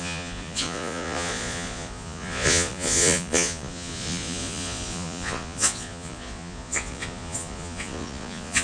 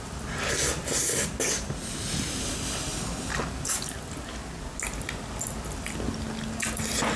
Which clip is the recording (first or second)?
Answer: second